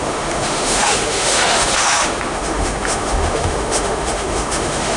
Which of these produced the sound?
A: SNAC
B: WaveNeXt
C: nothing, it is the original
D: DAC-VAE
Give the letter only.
D